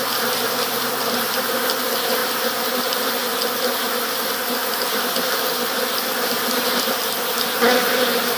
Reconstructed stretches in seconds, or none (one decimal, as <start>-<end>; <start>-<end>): none